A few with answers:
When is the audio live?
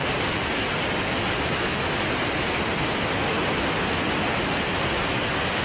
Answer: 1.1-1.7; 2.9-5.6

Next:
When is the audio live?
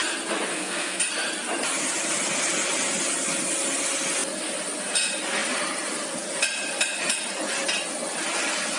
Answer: 0.0-0.5; 1.0-8.8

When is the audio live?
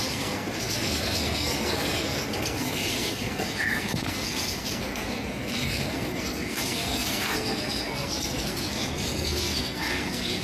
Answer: none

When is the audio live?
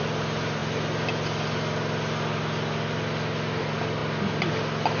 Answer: 0.0-5.0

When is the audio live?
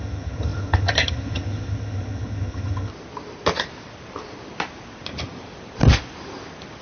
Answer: 2.9-6.8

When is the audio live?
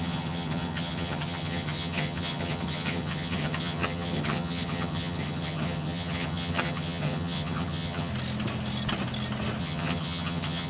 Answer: 8.1-9.6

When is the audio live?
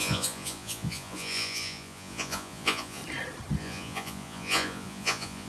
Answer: 3.0-3.6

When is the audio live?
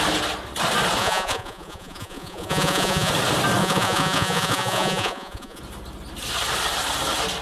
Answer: 0.0-1.0; 3.1-3.6; 5.6-7.4